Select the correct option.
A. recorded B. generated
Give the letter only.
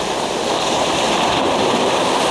A